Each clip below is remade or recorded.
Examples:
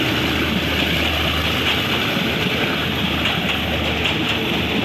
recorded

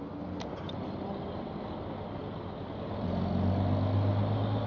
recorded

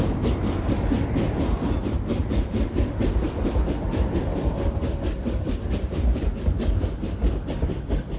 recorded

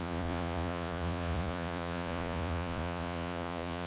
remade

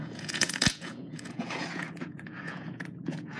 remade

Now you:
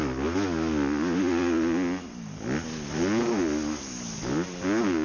recorded